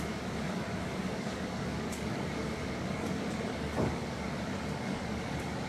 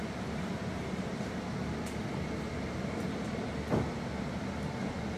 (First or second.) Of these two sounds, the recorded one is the second